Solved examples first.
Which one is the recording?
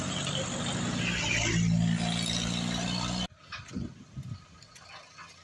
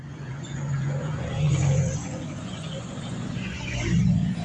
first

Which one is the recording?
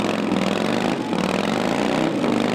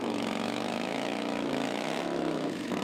first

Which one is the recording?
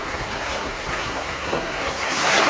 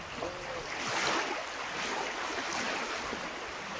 second